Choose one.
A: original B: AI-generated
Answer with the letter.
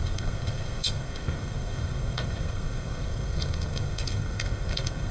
B